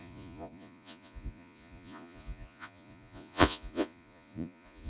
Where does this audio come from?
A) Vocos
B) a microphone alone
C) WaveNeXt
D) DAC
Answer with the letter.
A